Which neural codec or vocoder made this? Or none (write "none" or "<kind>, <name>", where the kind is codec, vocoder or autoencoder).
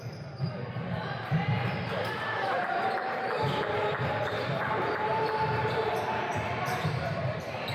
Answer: vocoder, BigVGAN v2